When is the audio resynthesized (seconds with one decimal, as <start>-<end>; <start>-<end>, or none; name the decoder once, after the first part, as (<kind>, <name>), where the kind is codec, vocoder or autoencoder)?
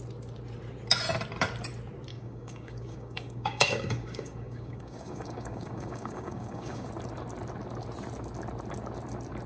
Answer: 2.1-6.9 (codec, DAC)